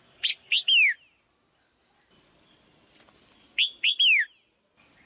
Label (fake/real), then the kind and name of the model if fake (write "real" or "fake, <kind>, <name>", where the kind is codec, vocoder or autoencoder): real